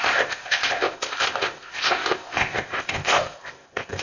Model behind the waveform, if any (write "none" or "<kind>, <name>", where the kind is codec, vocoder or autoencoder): codec, ZipCodec